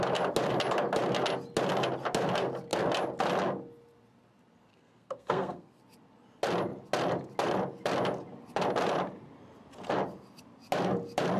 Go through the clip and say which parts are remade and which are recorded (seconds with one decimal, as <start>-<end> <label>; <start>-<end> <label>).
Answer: 0.0-4.7 recorded; 4.7-5.8 remade; 5.8-11.4 recorded